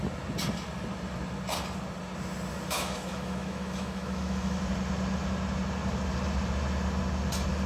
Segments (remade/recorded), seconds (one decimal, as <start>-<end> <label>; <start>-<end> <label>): 0.0-2.5 recorded; 2.5-4.6 remade; 4.6-7.7 recorded